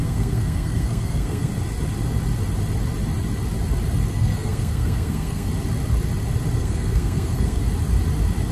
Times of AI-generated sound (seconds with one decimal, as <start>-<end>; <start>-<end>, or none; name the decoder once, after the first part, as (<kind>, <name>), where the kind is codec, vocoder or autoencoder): 0.0-1.5 (codec, SNAC); 4.1-5.5; 6.6-7.6